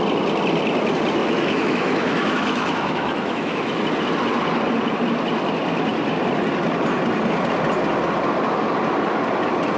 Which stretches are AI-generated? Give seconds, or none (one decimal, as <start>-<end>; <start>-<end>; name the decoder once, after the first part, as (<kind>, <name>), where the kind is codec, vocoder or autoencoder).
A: 1.2-3.8 (autoencoder, DAC-VAE)